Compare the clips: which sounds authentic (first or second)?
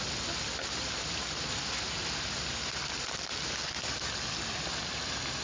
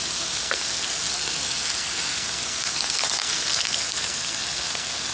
first